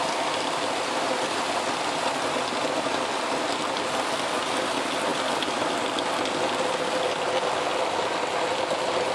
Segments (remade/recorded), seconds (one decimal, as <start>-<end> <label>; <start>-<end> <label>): 0.0-9.1 recorded

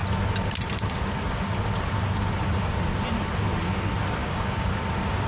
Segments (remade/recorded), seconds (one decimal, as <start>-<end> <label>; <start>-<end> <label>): 0.0-4.2 recorded; 4.2-4.7 remade; 4.7-5.3 recorded

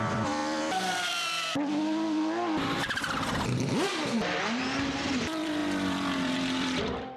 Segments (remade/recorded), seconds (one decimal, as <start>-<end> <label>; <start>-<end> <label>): 0.0-7.2 remade

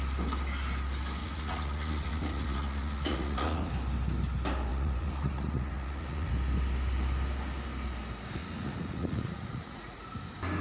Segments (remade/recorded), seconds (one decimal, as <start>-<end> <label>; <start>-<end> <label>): 0.0-1.2 recorded; 1.2-3.7 remade; 3.7-4.7 recorded; 4.7-6.3 remade; 6.3-8.4 recorded; 8.4-10.0 remade; 10.0-10.6 recorded

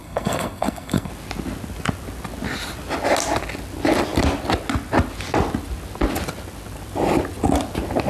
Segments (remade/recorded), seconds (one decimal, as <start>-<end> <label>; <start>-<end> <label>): 0.0-1.1 remade; 1.1-8.1 recorded

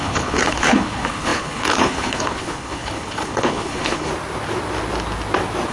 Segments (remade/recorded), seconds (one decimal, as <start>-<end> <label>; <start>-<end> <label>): 0.0-4.1 remade; 4.1-5.7 recorded